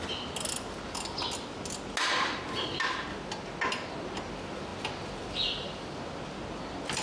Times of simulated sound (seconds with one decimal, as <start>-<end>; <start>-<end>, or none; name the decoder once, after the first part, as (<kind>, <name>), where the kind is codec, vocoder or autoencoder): none